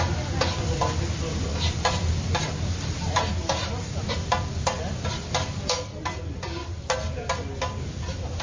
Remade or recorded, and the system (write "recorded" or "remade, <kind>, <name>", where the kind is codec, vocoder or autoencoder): recorded